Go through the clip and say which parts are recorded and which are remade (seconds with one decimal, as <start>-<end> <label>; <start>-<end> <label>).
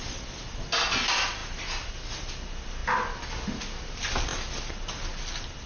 0.0-5.7 recorded